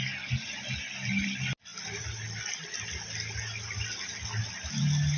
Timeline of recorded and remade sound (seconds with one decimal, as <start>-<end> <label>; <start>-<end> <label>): 0.0-5.2 recorded